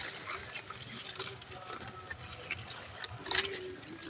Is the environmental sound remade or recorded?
recorded